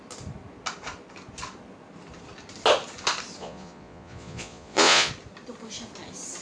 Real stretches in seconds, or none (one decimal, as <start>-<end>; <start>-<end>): 0.0-3.4; 5.1-6.4